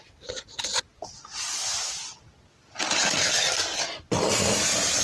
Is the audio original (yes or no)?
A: yes